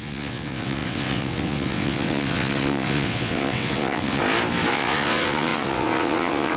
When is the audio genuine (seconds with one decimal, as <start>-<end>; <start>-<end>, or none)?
4.2-4.7